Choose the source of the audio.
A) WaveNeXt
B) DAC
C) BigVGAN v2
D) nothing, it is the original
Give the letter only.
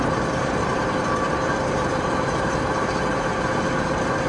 C